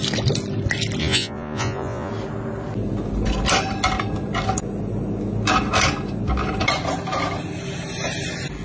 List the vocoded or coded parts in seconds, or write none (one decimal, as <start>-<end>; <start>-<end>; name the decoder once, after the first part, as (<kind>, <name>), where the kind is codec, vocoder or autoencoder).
1.0-2.1 (vocoder, Vocos)